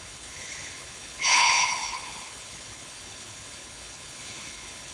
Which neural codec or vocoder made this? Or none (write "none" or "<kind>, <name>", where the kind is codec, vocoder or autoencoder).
codec, HILCodec